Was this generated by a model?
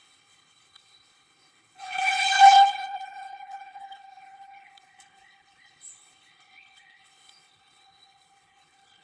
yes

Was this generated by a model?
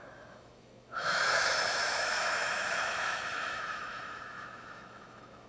yes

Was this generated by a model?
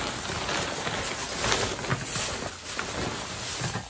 no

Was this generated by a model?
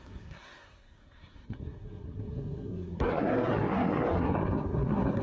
yes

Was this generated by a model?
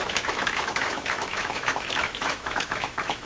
yes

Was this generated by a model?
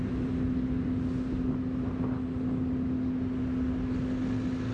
no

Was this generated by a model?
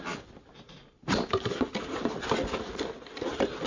yes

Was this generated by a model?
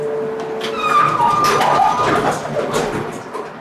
no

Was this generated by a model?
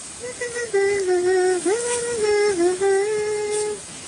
yes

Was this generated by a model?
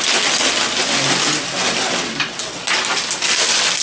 no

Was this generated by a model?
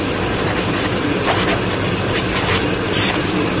no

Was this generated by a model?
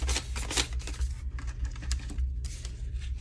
no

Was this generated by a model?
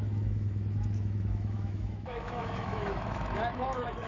yes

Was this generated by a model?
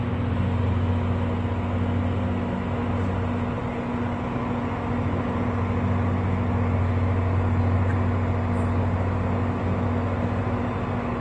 no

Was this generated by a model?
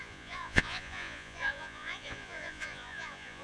yes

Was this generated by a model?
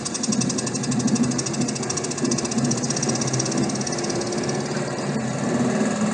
no